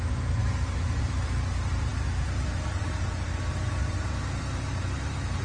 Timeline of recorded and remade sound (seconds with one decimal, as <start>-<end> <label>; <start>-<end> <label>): 0.0-5.4 remade